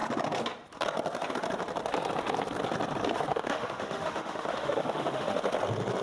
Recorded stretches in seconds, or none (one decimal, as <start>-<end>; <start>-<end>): 0.0-3.3; 5.4-6.0